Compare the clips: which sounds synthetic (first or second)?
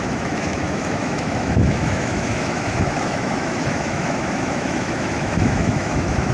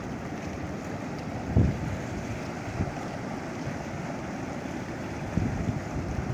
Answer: first